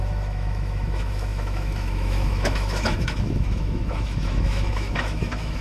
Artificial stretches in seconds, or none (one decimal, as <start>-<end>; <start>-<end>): 0.0-5.6